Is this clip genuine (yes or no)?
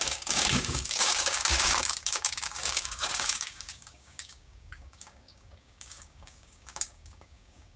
no